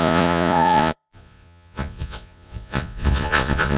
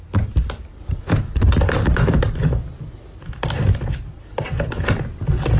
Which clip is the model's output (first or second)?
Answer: first